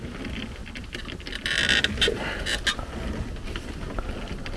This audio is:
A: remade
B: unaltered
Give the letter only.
B